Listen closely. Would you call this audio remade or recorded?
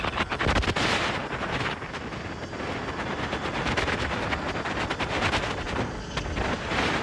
recorded